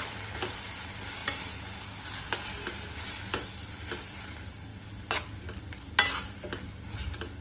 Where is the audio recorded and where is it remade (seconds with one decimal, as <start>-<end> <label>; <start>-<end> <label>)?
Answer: 0.0-7.4 recorded